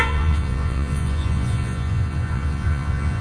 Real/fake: fake